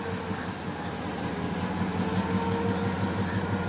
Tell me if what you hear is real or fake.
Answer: real